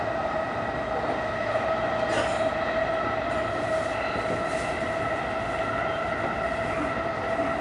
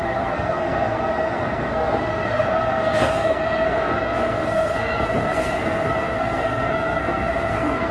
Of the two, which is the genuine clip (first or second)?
first